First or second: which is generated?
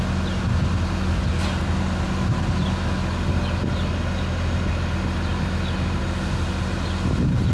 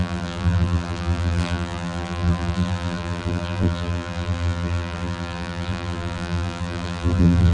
second